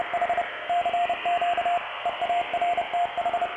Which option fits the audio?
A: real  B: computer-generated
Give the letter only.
A